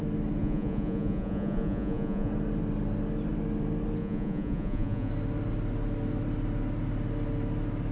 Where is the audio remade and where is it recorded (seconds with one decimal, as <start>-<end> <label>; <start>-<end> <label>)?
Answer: 0.0-0.4 recorded; 0.4-2.3 remade; 2.3-4.0 recorded; 4.0-5.1 remade; 5.1-7.9 recorded